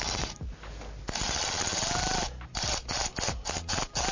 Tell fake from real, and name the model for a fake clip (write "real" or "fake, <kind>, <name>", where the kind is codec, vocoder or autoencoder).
real